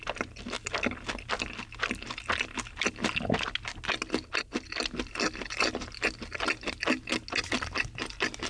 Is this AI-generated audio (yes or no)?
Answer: no